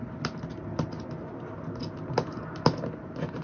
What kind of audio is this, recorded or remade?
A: recorded